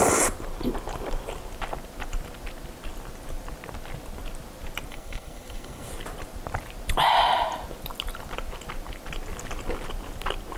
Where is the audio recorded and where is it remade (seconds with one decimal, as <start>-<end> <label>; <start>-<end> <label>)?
0.0-4.9 recorded; 4.9-5.9 remade; 5.9-10.6 recorded

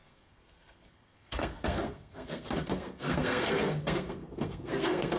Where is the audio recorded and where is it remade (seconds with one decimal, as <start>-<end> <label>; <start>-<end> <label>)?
0.0-5.2 remade